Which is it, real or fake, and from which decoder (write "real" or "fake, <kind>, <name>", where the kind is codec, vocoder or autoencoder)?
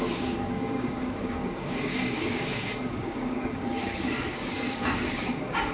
fake, codec, DAC